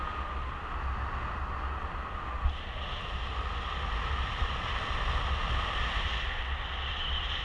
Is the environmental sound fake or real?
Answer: real